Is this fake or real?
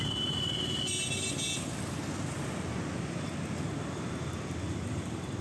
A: real